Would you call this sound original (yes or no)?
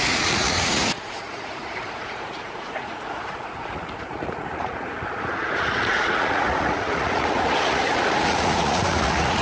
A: no